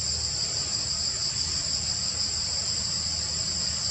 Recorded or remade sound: recorded